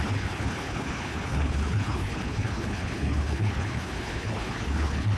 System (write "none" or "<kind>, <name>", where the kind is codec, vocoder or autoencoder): codec, HILCodec